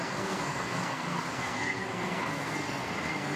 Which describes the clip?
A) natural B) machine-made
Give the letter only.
B